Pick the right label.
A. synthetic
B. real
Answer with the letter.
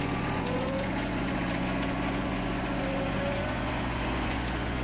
A